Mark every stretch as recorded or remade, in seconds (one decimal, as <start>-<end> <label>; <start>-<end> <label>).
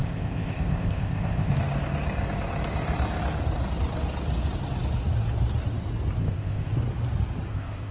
0.0-1.5 remade; 1.5-6.2 recorded; 6.2-6.7 remade; 6.7-7.5 recorded; 7.5-7.9 remade